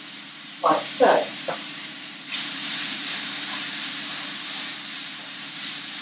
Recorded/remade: remade